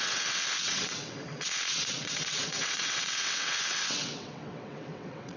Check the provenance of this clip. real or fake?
fake